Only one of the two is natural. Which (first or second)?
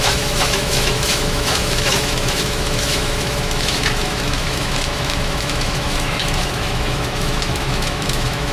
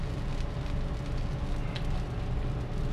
second